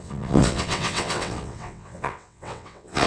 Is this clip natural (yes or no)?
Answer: no